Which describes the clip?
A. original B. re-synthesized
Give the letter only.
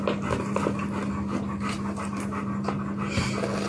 A